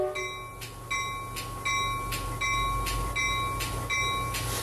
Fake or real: real